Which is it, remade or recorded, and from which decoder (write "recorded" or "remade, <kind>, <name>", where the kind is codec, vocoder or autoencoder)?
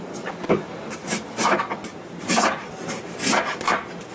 recorded